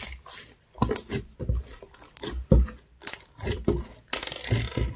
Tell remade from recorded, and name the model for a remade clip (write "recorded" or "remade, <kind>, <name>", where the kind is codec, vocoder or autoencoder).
recorded